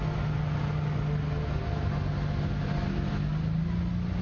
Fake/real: real